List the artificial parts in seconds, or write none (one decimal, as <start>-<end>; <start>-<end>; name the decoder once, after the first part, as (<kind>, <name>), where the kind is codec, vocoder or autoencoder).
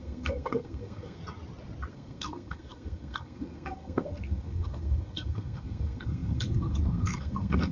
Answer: 0.0-1.2 (codec, SNAC); 1.9-7.7